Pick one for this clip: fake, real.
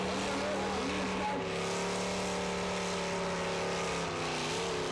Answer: real